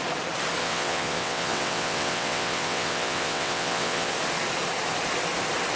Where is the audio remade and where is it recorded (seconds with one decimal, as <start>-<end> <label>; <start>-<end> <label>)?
0.0-0.6 recorded; 0.6-4.1 remade; 4.1-5.8 recorded